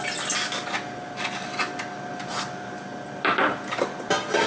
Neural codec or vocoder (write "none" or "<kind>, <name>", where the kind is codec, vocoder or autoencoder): none